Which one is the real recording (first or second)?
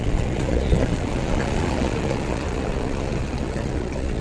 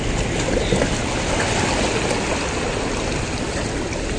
second